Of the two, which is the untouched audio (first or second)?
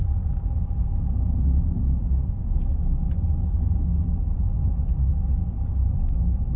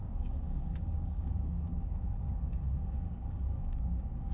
first